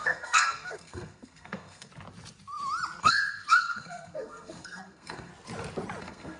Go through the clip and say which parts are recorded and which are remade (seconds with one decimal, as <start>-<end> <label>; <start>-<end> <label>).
0.0-1.9 remade; 1.9-3.0 recorded; 3.0-5.3 remade; 5.3-6.0 recorded; 6.0-6.4 remade